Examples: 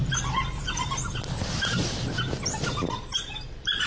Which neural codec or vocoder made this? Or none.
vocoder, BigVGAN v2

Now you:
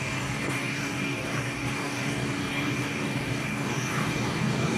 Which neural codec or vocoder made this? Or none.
codec, DAC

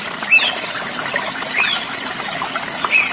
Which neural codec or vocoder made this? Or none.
none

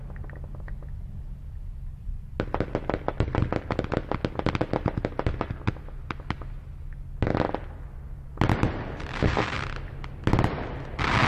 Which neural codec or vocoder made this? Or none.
none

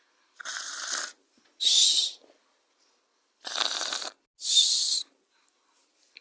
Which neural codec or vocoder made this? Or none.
none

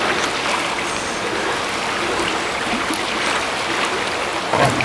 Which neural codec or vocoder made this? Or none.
none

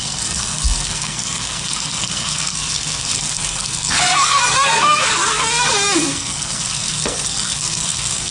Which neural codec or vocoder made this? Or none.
codec, SNAC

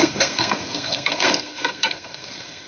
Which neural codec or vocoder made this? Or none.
codec, SNAC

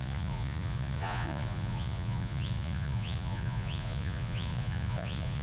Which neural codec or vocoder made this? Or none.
vocoder, Vocos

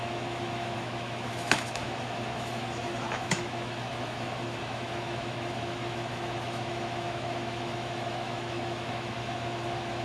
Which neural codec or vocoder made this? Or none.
autoencoder, DAC-VAE